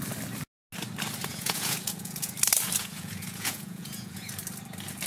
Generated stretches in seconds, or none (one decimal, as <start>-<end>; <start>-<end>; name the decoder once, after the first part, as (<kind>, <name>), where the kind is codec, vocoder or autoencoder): 1.3-2.3 (vocoder, Vocos); 2.8-4.3